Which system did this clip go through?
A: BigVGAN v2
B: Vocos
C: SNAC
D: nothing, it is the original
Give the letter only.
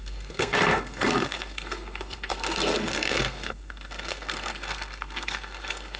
C